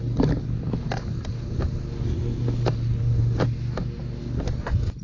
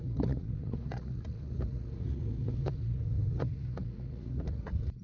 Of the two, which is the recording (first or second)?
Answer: first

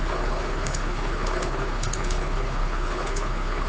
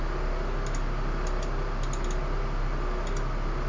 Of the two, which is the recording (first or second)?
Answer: second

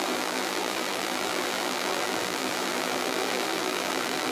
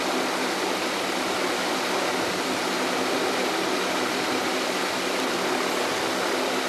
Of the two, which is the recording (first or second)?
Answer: second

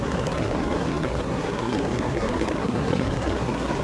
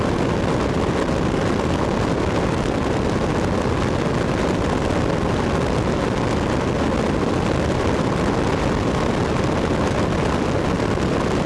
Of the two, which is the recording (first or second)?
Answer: second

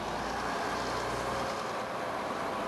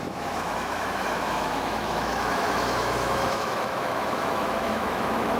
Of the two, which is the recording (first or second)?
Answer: first